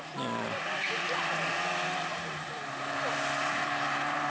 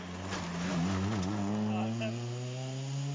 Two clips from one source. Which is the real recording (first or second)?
second